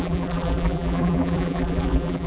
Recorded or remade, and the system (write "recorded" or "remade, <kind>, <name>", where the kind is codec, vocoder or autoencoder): remade, vocoder, BigVGAN v2